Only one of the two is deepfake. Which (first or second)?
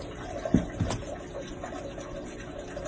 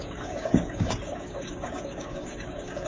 second